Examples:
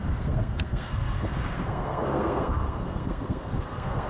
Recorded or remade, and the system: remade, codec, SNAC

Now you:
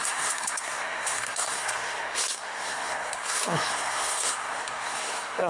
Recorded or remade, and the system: remade, codec, SNAC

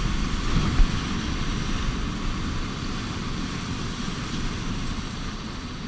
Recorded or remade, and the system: recorded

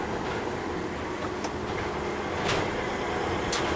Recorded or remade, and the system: recorded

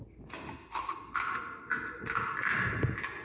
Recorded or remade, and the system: recorded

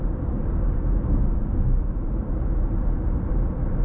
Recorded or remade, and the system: recorded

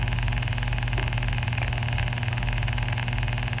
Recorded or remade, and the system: recorded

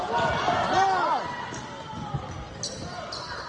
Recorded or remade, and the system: recorded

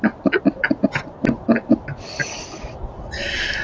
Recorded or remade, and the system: recorded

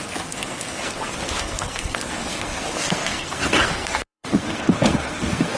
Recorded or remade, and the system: remade, codec, SNAC